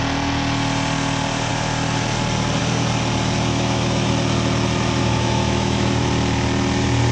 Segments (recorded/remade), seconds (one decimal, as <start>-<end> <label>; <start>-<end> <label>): 0.0-3.5 recorded; 3.5-4.1 remade; 4.1-5.0 recorded; 5.0-6.1 remade; 6.1-7.1 recorded